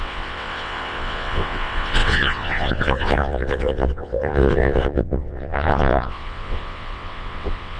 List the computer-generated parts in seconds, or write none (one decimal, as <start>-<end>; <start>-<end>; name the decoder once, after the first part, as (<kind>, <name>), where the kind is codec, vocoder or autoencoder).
0.0-7.8 (vocoder, WaveNeXt)